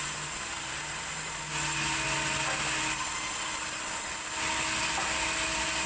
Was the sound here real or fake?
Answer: real